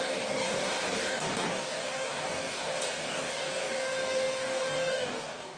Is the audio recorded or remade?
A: remade